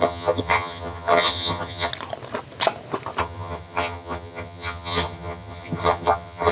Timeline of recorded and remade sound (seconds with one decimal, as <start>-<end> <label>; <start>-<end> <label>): 0.0-1.9 remade; 1.9-3.2 recorded; 3.2-6.5 remade